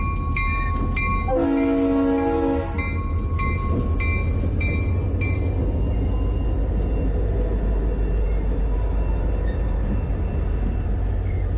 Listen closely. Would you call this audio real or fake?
real